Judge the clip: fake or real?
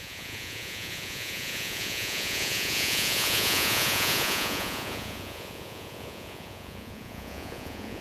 fake